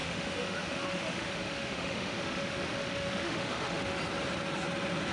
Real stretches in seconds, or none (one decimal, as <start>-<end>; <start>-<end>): 4.0-5.1